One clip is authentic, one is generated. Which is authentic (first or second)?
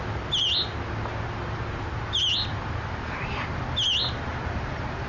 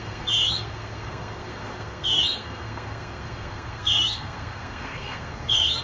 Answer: first